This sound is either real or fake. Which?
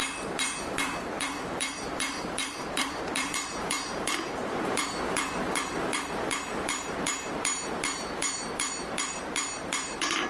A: fake